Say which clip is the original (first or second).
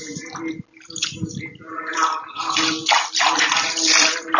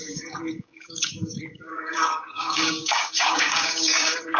first